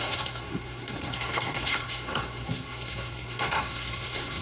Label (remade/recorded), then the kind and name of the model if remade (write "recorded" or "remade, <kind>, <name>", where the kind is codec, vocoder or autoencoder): remade, codec, SNAC